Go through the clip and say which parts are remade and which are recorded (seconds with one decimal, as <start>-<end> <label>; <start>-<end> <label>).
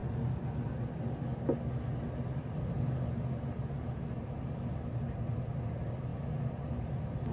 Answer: 0.0-7.3 recorded